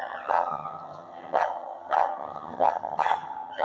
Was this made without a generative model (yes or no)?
no